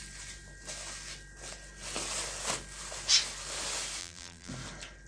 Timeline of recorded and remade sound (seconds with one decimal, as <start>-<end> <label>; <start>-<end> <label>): 0.0-4.0 recorded; 4.0-4.5 remade; 4.5-5.1 recorded